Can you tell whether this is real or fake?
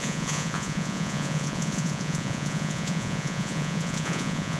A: fake